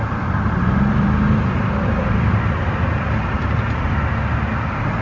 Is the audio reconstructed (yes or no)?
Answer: no